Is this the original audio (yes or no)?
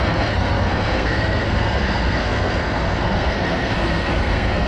no